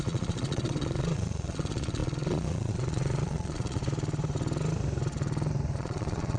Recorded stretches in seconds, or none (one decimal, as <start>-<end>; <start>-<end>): 3.8-5.8